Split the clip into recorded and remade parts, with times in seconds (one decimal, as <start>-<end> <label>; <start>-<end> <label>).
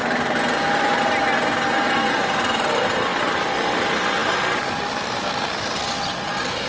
0.0-6.7 recorded